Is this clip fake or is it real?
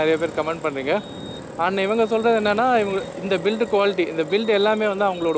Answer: real